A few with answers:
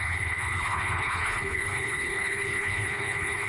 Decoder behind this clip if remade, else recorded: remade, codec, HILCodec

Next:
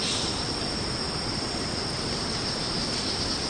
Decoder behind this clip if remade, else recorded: recorded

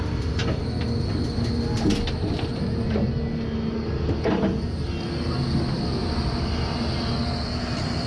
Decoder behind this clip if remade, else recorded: recorded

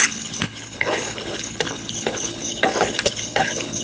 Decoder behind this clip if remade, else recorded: remade, codec, HILCodec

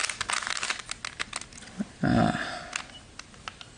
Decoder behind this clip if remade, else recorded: recorded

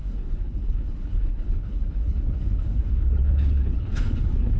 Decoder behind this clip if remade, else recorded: remade, codec, HILCodec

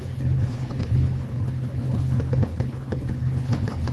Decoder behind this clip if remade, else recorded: remade, codec, HILCodec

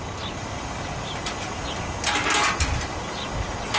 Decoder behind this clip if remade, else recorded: recorded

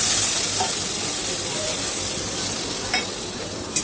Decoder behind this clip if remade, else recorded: recorded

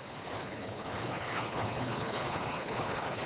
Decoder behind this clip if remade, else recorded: remade, codec, HILCodec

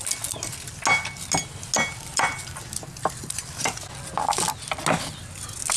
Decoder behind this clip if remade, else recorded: recorded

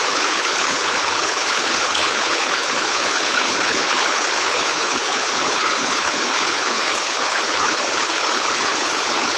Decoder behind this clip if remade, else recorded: remade, codec, HILCodec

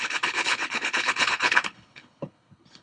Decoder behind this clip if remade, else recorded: remade, codec, HILCodec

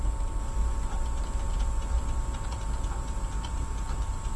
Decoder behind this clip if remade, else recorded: recorded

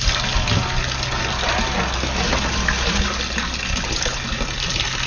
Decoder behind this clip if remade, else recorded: recorded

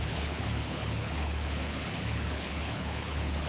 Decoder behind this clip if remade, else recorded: remade, codec, HILCodec